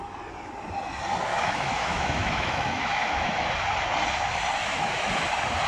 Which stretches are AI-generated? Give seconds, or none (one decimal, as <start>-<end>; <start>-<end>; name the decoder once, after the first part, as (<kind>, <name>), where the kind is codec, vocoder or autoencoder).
1.3-3.5 (autoencoder, DAC-VAE); 4.6-5.1